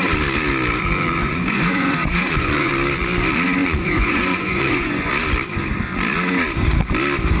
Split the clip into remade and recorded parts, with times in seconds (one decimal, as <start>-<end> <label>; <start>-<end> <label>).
0.0-1.2 recorded; 1.2-2.7 remade; 2.7-3.6 recorded; 3.6-5.1 remade; 5.1-7.4 recorded